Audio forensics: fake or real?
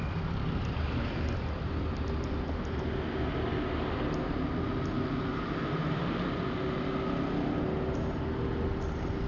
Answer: real